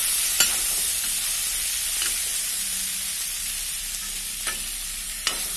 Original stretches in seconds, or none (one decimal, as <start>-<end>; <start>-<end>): 0.5-2.3; 4.0-5.6